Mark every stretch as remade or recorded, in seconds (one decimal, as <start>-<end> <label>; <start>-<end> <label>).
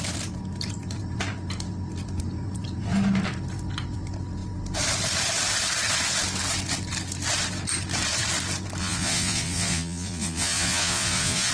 0.0-8.8 recorded; 8.8-11.5 remade